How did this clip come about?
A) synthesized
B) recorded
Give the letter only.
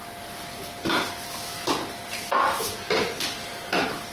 B